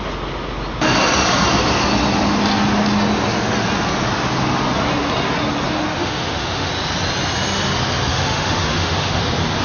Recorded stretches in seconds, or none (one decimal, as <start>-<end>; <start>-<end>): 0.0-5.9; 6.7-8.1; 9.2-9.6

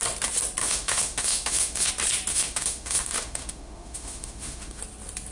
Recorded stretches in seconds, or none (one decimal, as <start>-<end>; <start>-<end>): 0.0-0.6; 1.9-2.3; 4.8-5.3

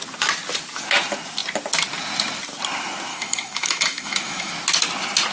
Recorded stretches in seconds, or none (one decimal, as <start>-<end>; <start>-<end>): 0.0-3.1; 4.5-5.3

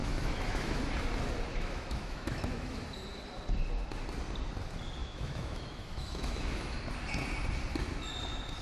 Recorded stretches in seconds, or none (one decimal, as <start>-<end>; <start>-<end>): 0.8-1.5; 2.8-5.0; 6.8-8.6

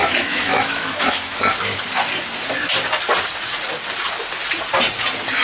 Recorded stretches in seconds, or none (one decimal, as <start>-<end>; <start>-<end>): 1.4-5.4